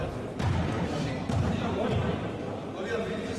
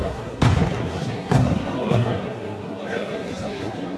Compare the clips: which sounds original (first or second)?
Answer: first